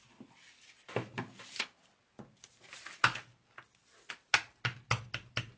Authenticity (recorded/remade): recorded